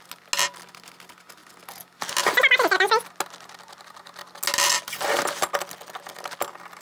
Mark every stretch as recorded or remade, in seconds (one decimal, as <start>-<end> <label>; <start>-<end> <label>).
0.0-6.8 recorded